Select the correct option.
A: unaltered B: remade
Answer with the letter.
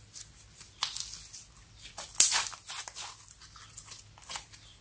A